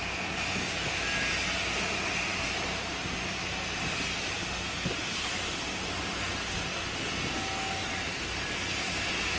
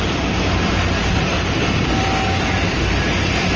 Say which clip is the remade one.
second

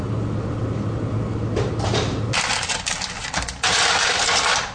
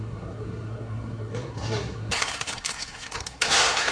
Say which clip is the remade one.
second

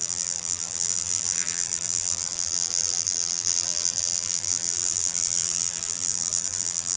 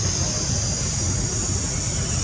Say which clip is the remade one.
first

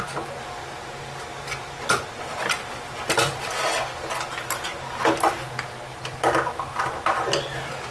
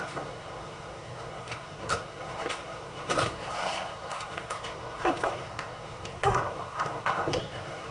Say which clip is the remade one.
second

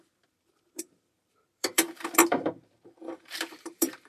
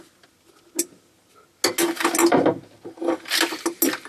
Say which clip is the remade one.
first